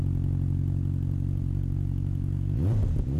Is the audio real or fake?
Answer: real